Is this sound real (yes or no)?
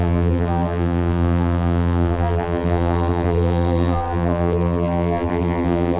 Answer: no